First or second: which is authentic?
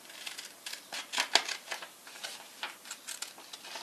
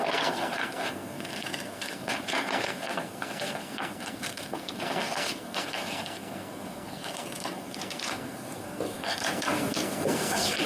first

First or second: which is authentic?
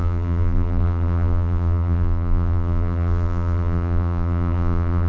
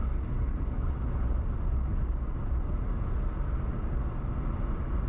second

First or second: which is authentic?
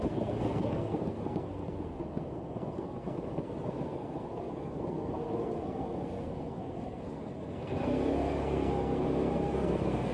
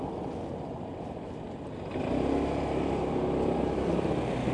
second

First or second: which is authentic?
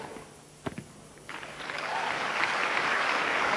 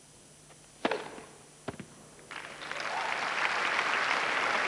second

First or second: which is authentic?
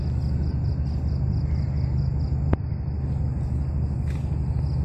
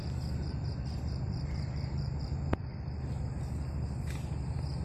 first